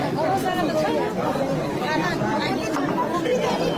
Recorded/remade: recorded